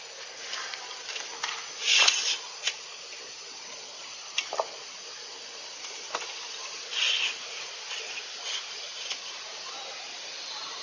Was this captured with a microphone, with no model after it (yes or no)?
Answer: yes